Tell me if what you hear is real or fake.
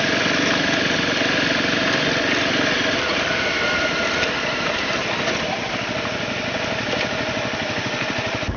real